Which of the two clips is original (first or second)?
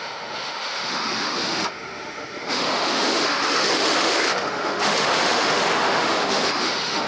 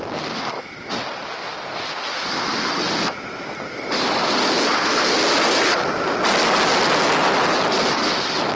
second